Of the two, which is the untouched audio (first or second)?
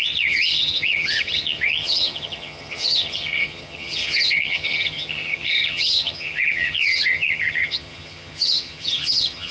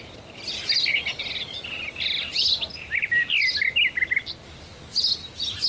second